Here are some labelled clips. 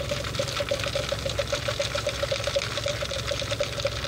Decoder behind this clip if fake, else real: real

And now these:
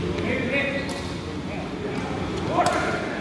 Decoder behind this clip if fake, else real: real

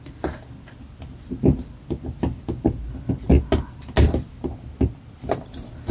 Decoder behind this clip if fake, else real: real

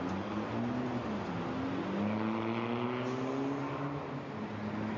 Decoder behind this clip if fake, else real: real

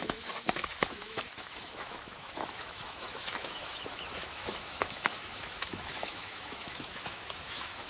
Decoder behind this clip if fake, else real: fake, autoencoder, DAC-VAE